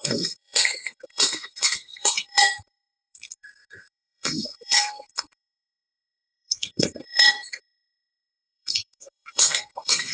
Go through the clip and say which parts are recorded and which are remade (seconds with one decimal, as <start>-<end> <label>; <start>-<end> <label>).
0.0-10.1 remade

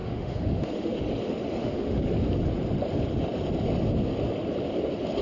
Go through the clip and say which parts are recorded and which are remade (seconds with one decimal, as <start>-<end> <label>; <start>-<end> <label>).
0.0-1.0 remade; 1.0-1.6 recorded; 1.6-2.1 remade; 2.1-5.2 recorded

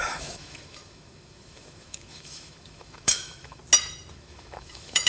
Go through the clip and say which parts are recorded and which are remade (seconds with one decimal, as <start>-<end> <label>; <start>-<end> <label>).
0.0-3.6 remade; 3.6-4.1 recorded; 4.1-5.1 remade

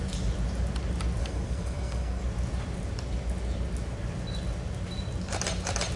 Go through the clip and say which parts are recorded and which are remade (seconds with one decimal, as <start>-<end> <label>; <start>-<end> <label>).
0.0-1.2 recorded; 1.2-2.2 remade; 2.2-6.0 recorded

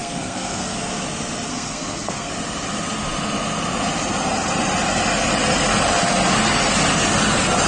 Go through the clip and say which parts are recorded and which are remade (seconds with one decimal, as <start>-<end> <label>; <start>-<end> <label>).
0.0-0.8 remade; 0.8-1.5 recorded; 1.5-2.3 remade; 2.3-7.7 recorded

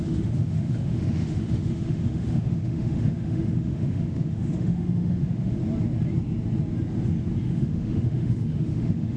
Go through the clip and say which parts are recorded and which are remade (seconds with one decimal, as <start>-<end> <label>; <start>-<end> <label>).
0.0-5.6 remade; 5.6-7.4 recorded; 7.4-9.2 remade

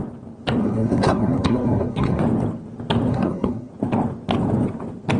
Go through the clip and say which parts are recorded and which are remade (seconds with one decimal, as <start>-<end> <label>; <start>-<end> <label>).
0.0-0.6 recorded; 0.6-2.2 remade; 2.2-3.1 recorded; 3.1-3.7 remade; 3.7-5.2 recorded

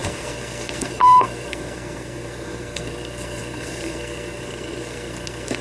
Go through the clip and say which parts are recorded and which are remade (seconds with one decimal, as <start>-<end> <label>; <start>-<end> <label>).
0.0-5.6 remade